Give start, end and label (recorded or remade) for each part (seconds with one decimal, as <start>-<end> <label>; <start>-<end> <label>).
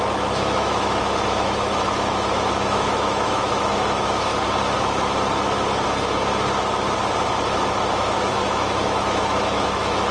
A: 0.0-4.3 remade; 4.3-8.1 recorded; 8.1-10.1 remade